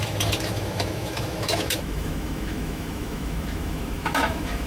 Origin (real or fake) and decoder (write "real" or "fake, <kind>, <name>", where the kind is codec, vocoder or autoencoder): fake, autoencoder, DAC-VAE